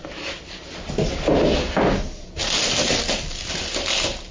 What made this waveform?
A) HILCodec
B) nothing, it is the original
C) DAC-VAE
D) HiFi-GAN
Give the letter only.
B